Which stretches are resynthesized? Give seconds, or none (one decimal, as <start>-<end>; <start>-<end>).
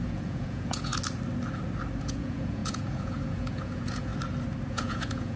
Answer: 0.0-0.9; 2.0-4.1; 4.7-5.4